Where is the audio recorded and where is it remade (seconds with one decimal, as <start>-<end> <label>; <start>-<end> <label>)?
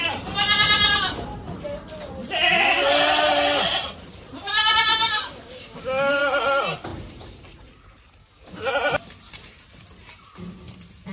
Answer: 0.0-4.9 recorded; 4.9-6.2 remade; 6.2-8.2 recorded; 8.2-8.7 remade; 8.7-11.1 recorded